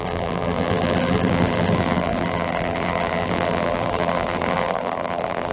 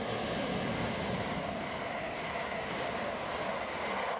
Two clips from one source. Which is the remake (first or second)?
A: first